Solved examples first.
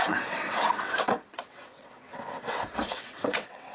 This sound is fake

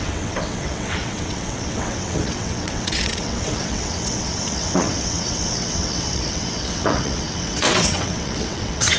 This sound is fake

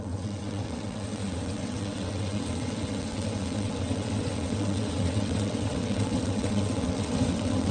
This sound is fake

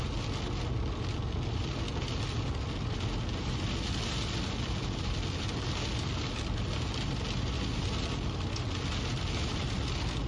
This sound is real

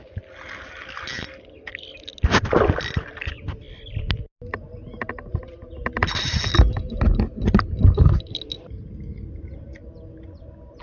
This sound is real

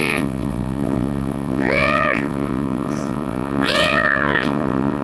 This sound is fake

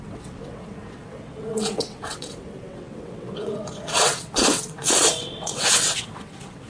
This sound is fake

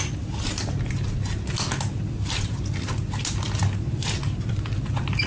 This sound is real